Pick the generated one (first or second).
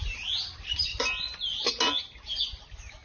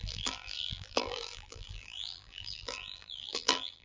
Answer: second